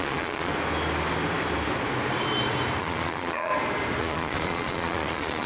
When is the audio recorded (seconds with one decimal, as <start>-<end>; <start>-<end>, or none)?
0.5-2.8; 3.5-4.0